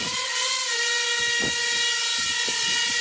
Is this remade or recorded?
recorded